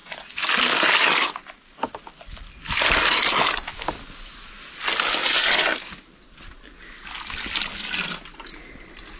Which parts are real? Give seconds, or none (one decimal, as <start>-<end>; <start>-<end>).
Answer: 0.5-9.2